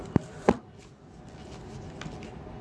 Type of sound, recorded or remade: recorded